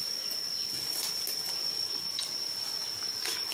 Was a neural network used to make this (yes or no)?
yes